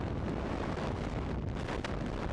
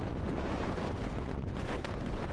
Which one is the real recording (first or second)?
first